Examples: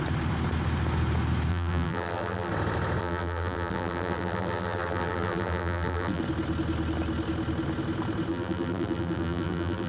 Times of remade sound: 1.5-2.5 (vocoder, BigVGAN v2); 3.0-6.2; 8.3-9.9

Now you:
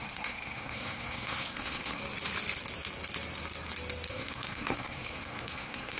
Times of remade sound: 0.0-2.0 (codec, SNAC); 4.1-6.0

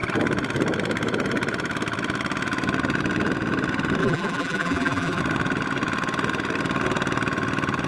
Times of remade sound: 4.0-5.2 (vocoder, BigVGAN v2)

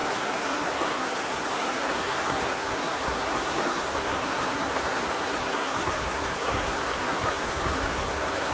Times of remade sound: 0.0-8.5 (codec, SNAC)

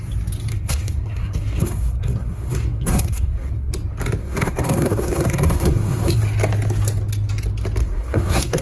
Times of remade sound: 0.5-3.7 (codec, SNAC); 4.2-6.2; 7.8-8.6

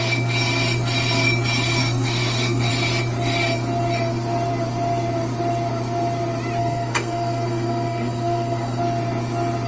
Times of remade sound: 1.8-2.7 (codec, SNAC); 6.6-8.8

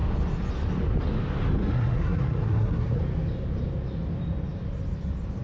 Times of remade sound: 1.6-3.0 (codec, SNAC)

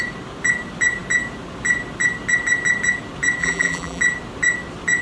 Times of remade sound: 3.4-4.0 (vocoder, BigVGAN v2)